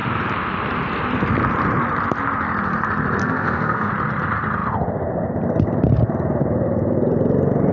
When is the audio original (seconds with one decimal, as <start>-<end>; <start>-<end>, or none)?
0.0-3.2; 3.9-7.7